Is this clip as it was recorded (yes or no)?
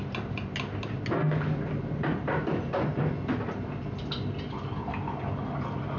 yes